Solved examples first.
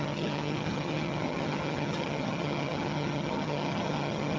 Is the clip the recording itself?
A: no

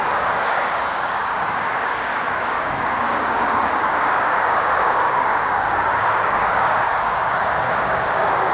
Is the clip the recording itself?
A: no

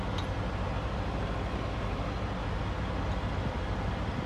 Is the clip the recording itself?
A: yes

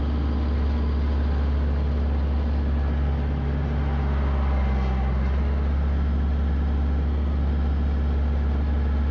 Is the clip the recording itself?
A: yes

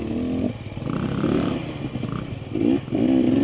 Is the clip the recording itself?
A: yes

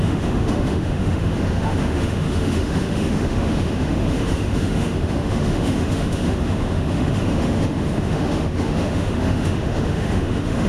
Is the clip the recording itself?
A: no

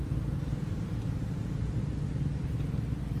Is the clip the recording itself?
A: yes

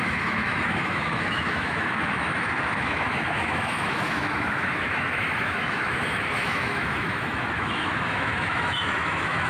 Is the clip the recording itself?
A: no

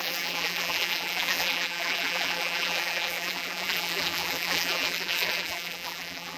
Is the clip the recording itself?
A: no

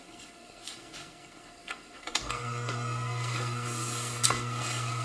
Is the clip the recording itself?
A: no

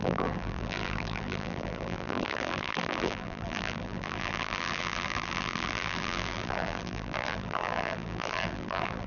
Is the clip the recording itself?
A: no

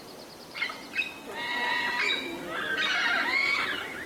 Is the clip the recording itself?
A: yes